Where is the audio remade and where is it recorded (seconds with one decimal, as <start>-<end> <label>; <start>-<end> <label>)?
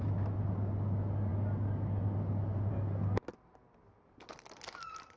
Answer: 0.0-5.2 recorded